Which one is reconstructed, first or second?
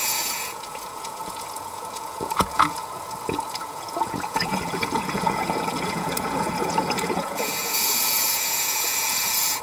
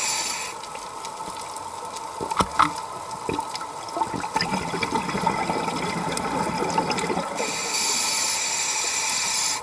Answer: first